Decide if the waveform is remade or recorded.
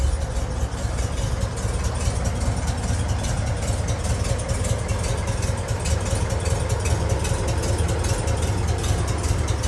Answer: recorded